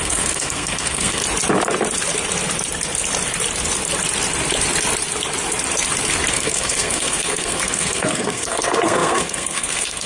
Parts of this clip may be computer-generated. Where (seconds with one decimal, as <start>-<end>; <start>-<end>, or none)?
0.0-1.2; 6.3-10.1